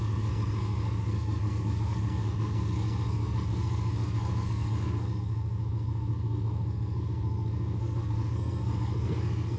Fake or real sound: fake